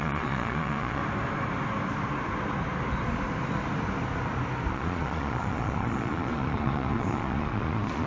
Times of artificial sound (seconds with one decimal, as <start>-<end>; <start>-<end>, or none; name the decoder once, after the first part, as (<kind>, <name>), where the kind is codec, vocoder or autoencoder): 0.0-1.0 (vocoder, Vocos); 4.7-8.1